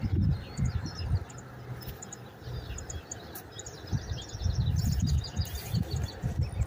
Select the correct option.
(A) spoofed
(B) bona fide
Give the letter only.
B